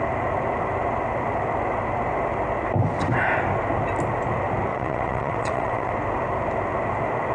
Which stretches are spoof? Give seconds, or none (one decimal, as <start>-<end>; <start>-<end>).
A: 4.7-5.9